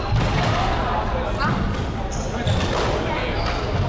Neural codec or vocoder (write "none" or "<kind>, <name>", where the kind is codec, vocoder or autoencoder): none